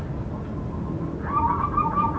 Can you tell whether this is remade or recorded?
recorded